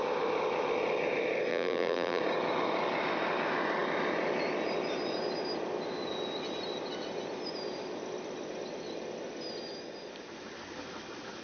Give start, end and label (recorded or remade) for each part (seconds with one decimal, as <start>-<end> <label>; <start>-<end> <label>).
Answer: 0.0-1.5 recorded; 1.5-2.2 remade; 2.2-11.4 recorded